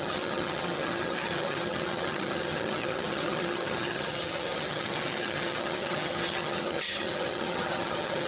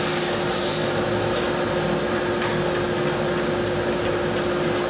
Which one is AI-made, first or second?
first